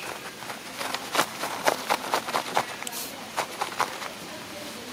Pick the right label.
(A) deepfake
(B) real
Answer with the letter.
B